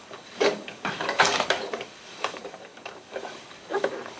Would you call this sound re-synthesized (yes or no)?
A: yes